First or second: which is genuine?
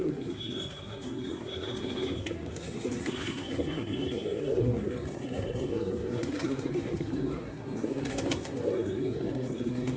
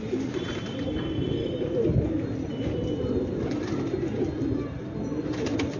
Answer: second